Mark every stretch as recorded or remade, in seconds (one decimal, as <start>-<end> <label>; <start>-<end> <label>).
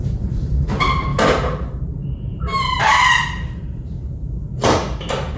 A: 0.0-5.4 remade